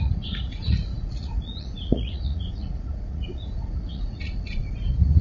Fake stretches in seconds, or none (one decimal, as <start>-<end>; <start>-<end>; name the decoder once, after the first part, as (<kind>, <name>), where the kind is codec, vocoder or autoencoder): 0.0-5.2 (vocoder, Vocos)